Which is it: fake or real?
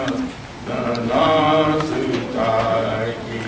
real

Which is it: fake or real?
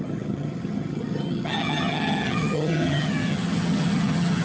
fake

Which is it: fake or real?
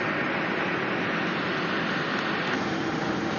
real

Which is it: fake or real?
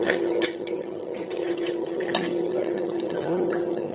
fake